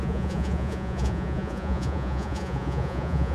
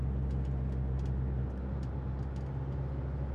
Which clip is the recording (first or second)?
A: second